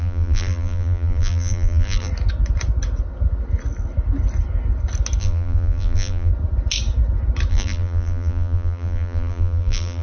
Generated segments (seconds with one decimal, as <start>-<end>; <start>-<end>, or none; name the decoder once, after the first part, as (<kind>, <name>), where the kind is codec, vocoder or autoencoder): 0.0-2.1 (vocoder, BigVGAN v2); 5.2-6.3; 7.5-10.0